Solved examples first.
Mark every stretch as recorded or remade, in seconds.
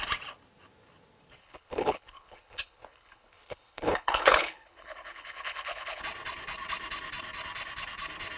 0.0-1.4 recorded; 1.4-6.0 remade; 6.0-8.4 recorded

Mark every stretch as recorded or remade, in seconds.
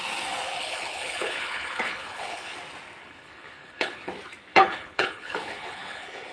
0.0-0.6 recorded; 0.6-2.5 remade; 2.5-3.0 recorded; 3.0-4.1 remade; 4.1-4.5 recorded; 4.5-6.3 remade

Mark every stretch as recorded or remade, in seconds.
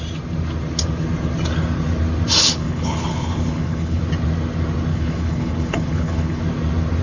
0.0-2.4 recorded; 2.4-4.0 remade; 4.0-4.9 recorded; 4.9-6.4 remade; 6.4-7.0 recorded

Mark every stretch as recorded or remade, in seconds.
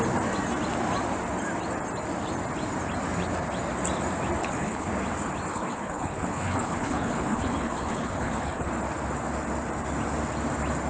0.0-4.4 recorded; 4.4-4.9 remade; 4.9-5.5 recorded; 5.5-8.7 remade; 8.7-10.9 recorded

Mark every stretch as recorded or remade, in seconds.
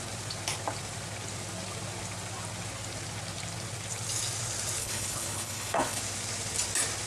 0.0-4.8 recorded; 4.8-6.0 remade; 6.0-7.1 recorded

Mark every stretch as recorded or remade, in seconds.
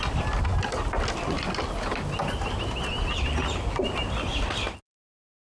0.0-5.6 recorded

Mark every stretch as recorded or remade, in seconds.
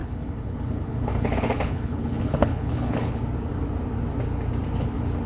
0.0-3.2 remade; 3.2-5.3 recorded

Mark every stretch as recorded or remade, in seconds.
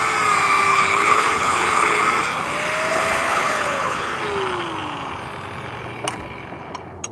0.0-0.7 recorded; 0.7-2.0 remade; 2.0-2.9 recorded; 2.9-4.1 remade; 4.1-7.1 recorded